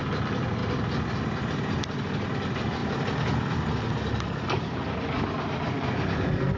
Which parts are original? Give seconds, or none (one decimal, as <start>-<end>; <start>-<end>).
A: 0.0-6.6